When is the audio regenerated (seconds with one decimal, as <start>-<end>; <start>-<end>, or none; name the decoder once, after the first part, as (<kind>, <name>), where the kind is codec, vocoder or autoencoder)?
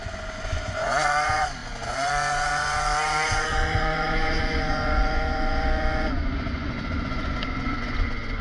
0.0-8.4 (vocoder, Vocos)